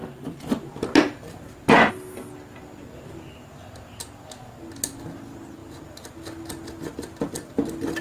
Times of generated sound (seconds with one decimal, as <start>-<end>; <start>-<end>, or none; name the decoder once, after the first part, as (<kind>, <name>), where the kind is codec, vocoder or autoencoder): none